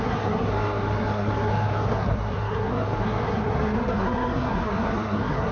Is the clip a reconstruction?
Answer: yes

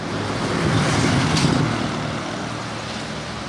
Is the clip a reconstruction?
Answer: no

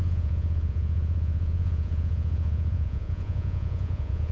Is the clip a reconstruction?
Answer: yes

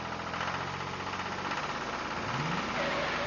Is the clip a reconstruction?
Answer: no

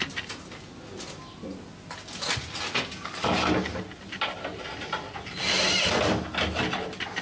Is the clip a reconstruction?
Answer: no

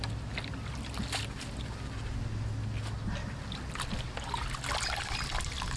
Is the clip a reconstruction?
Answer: no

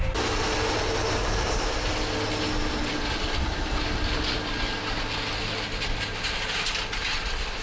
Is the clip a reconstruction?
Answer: no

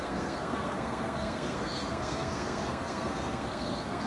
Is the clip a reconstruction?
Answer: yes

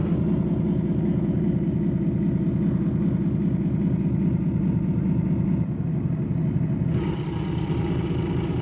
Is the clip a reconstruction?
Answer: no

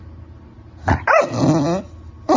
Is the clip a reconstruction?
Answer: no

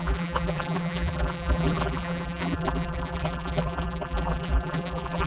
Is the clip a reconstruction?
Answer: yes